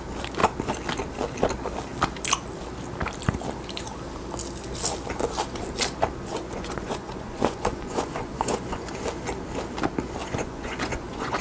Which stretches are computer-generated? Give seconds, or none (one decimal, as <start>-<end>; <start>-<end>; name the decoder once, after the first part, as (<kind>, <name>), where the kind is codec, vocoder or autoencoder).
6.3-8.9 (vocoder, Vocos); 10.2-11.4

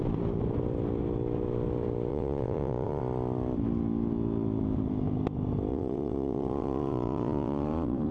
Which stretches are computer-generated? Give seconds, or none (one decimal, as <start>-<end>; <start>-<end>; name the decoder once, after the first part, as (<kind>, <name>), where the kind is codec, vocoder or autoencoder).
2.1-3.0 (vocoder, Vocos); 5.7-8.1

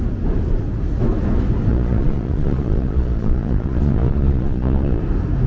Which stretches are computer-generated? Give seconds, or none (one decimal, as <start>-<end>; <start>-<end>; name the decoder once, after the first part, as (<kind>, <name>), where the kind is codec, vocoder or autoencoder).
1.7-5.0 (vocoder, Vocos)

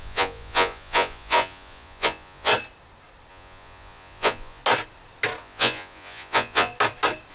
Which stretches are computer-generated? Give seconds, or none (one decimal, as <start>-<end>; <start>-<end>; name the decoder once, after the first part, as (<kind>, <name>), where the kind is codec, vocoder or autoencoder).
0.0-2.5 (vocoder, Vocos); 3.3-4.6; 5.4-6.7

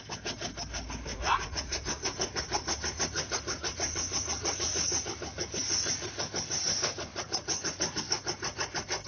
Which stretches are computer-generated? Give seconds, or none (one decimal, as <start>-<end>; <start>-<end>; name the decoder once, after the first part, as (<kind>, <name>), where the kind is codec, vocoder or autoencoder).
1.1-5.0 (vocoder, Vocos); 7.1-8.0

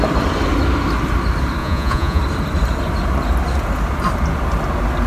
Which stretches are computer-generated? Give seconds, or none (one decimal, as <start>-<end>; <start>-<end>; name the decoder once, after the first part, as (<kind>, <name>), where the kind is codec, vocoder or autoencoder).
1.6-2.2 (vocoder, Vocos)